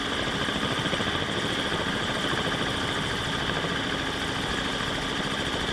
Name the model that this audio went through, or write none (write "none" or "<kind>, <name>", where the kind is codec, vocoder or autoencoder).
none